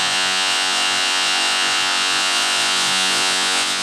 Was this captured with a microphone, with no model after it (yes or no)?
no